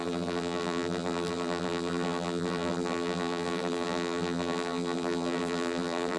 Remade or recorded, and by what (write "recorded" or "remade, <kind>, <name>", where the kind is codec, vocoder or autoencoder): remade, vocoder, BigVGAN v2